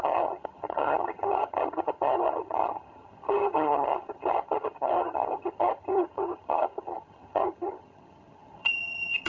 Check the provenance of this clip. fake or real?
fake